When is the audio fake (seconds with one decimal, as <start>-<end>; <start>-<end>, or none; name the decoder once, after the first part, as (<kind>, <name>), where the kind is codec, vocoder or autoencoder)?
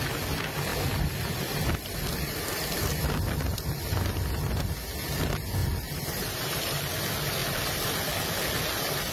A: 5.6-6.8 (vocoder, BigVGAN v2)